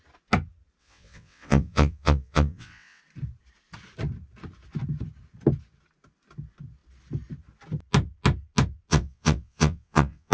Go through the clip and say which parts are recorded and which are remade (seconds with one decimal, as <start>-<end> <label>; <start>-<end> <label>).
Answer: 0.0-0.8 recorded; 0.8-3.0 remade; 3.0-8.9 recorded; 8.9-10.3 remade